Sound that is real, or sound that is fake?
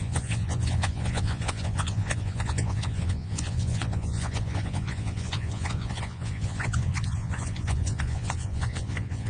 fake